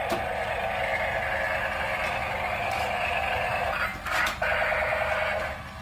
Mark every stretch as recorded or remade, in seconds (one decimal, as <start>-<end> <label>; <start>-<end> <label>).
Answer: 0.0-5.8 recorded

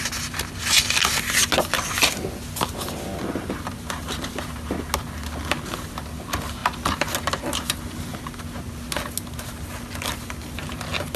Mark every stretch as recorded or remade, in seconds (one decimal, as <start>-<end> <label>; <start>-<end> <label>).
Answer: 0.0-11.2 recorded

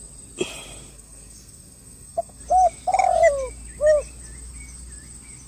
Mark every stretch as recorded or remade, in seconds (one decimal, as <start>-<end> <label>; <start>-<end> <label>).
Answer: 0.0-0.9 recorded; 0.9-2.4 remade; 2.4-5.5 recorded

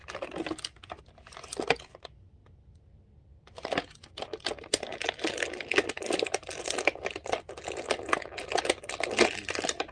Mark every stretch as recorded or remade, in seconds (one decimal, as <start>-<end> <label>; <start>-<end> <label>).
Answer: 0.0-9.9 recorded

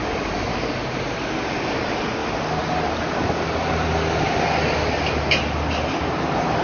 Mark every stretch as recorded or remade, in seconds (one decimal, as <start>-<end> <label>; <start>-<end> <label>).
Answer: 0.0-6.6 recorded